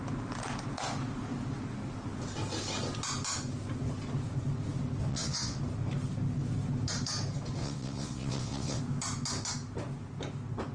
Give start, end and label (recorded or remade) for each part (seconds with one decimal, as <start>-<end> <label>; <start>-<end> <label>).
0.0-5.1 recorded; 5.1-5.6 remade; 5.6-7.6 recorded; 7.6-8.8 remade; 8.8-10.7 recorded

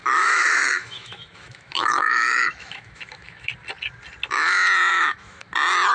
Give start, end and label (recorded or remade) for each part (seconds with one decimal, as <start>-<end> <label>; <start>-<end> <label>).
0.0-3.5 remade; 3.5-4.9 recorded; 4.9-5.5 remade; 5.5-5.9 recorded